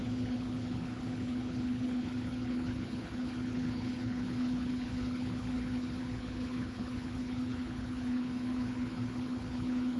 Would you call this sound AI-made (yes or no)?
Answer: yes